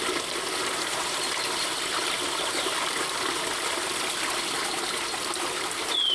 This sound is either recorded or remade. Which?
recorded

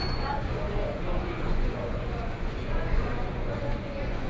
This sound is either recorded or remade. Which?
remade